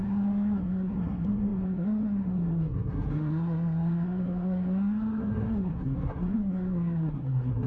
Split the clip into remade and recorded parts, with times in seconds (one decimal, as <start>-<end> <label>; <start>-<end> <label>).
0.0-7.7 remade